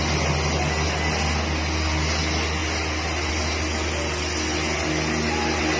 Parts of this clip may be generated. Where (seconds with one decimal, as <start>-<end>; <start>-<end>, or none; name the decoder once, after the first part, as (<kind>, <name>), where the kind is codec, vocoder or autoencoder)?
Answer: none